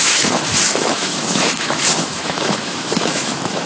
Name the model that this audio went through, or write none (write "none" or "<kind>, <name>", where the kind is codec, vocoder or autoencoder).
autoencoder, DAC-VAE